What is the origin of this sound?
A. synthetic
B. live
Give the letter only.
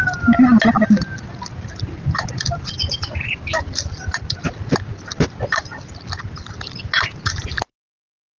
B